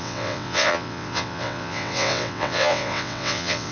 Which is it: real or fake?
fake